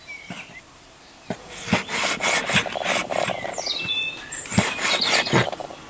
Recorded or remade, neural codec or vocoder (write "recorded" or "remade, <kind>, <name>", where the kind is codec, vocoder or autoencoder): recorded